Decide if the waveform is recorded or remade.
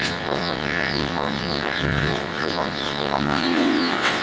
remade